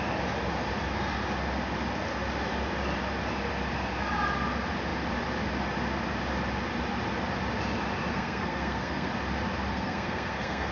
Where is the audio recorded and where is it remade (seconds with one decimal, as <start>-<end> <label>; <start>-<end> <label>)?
0.0-8.1 recorded; 8.1-9.1 remade; 9.1-9.7 recorded; 9.7-10.7 remade